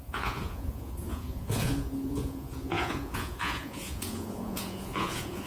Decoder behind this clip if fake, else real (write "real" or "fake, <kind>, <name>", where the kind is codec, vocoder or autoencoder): fake, vocoder, Vocos